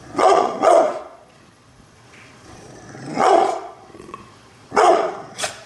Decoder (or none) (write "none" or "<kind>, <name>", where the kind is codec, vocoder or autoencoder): vocoder, Vocos